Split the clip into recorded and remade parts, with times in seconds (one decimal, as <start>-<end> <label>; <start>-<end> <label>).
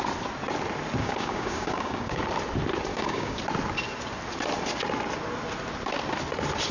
0.0-1.0 recorded; 1.0-2.2 remade; 2.2-2.9 recorded; 2.9-3.4 remade; 3.4-6.7 recorded